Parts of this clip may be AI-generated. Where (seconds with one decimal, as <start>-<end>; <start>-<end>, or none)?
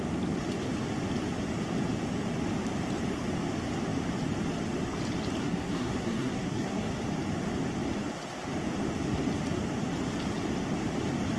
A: 5.4-6.9